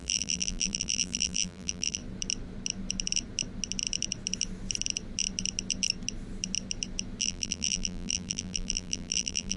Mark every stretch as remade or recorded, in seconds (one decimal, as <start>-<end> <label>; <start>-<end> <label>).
0.0-2.0 remade; 2.0-7.2 recorded; 7.2-9.6 remade